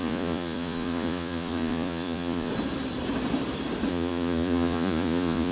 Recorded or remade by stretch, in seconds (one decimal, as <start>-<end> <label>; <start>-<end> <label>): 0.0-2.5 remade; 2.5-3.9 recorded; 3.9-5.5 remade